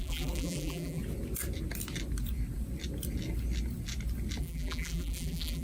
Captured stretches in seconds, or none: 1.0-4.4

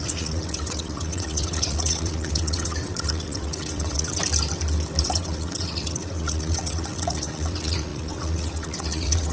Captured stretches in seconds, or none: 4.2-5.0

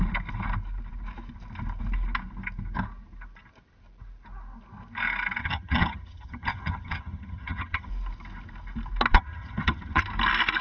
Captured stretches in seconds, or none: 0.0-5.4; 7.9-9.1; 10.0-10.6

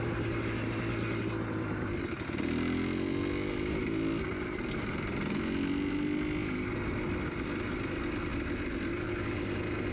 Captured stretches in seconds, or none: 0.0-9.9

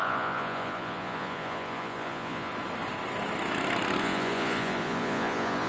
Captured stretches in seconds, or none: 2.5-4.0

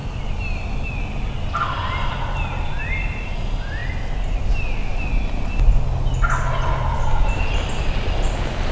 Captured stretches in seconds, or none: 0.0-8.7

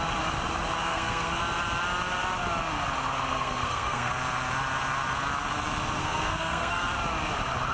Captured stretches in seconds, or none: 0.0-0.8; 1.4-3.3; 4.1-6.0; 6.9-7.7

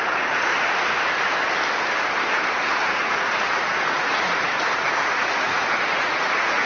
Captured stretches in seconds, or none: 0.5-2.7